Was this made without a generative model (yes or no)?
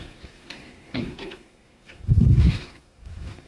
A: no